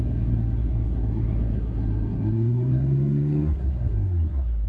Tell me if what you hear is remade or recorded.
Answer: remade